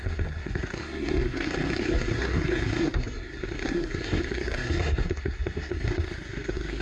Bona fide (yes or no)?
no